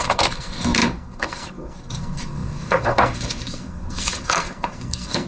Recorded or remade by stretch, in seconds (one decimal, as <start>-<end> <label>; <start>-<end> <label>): 0.0-5.3 remade